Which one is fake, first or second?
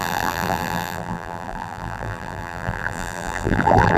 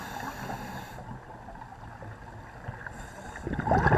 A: first